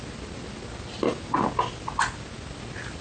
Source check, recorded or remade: recorded